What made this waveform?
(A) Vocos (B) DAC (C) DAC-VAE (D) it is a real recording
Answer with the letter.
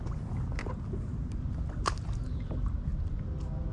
D